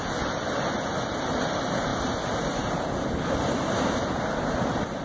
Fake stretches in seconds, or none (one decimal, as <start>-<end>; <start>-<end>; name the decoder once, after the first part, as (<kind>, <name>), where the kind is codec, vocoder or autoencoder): none